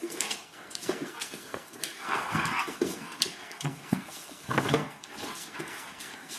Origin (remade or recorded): remade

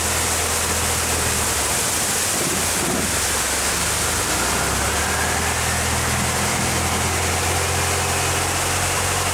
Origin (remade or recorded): recorded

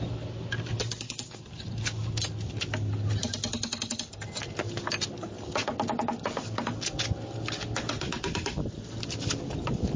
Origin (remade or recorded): recorded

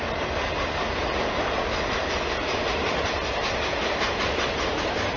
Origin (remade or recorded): recorded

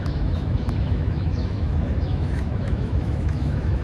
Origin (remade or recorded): remade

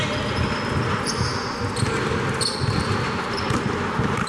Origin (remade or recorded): recorded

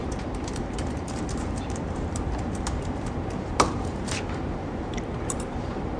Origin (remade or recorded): remade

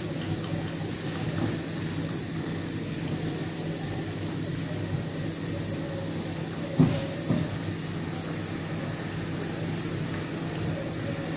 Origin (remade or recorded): recorded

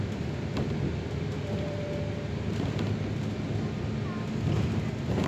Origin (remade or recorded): recorded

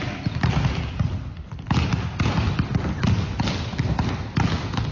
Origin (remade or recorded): recorded